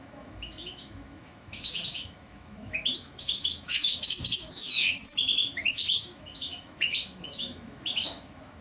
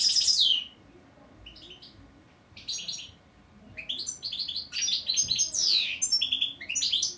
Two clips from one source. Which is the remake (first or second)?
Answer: first